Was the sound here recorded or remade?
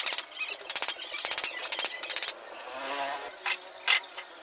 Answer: recorded